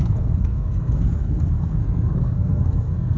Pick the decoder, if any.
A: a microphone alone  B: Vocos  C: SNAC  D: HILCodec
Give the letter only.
C